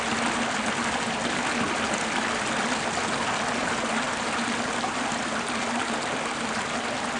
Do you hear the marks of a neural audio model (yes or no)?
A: no